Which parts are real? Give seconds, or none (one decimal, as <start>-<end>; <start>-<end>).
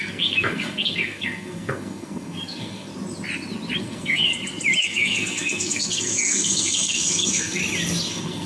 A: 2.9-3.8; 4.3-4.8; 7.6-8.1